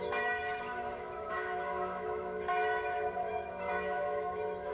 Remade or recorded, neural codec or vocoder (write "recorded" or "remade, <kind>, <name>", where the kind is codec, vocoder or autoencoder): remade, autoencoder, DAC-VAE